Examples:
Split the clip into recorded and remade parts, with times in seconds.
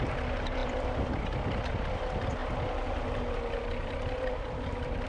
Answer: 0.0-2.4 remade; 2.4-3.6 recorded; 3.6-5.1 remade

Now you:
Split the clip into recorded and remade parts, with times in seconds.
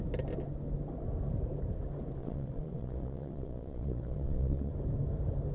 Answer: 0.0-2.2 recorded; 2.2-4.7 remade; 4.7-5.5 recorded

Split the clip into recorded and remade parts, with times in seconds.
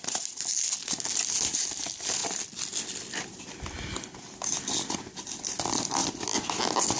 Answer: 0.0-7.0 recorded